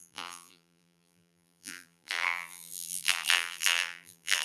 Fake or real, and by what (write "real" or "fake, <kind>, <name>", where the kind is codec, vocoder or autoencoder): fake, vocoder, BigVGAN v2